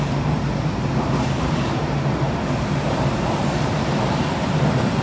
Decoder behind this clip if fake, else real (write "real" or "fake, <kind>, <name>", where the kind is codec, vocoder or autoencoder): fake, vocoder, BigVGAN v2